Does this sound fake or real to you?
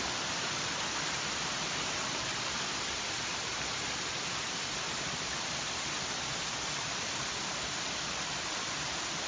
fake